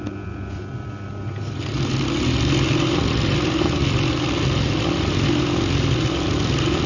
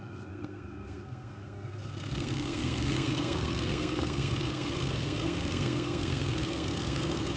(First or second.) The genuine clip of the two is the first